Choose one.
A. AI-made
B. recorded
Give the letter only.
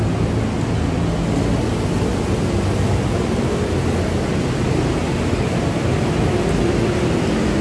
B